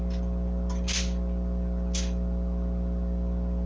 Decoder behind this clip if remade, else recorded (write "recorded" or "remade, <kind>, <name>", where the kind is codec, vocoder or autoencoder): recorded